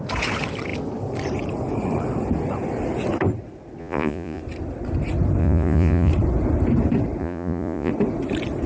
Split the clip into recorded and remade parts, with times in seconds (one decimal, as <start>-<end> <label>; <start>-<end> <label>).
0.0-3.8 recorded; 3.8-4.4 remade; 4.4-5.4 recorded; 5.4-6.1 remade; 6.1-7.2 recorded; 7.2-7.9 remade; 7.9-8.7 recorded